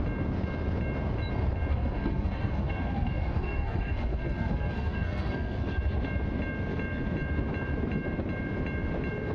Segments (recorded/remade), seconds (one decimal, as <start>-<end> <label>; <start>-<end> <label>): 0.0-1.7 recorded; 1.7-5.8 remade; 5.8-9.3 recorded